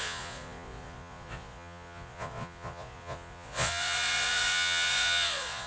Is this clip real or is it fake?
fake